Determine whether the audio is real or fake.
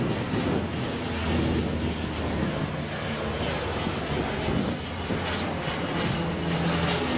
real